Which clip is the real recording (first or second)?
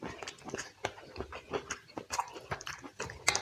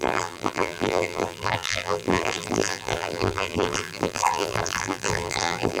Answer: first